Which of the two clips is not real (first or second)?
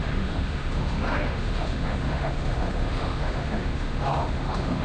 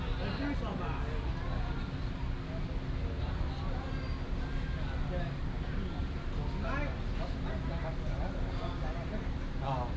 first